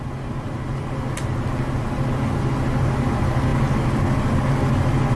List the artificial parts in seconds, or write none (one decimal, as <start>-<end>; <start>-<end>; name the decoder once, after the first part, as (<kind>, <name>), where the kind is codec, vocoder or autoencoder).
none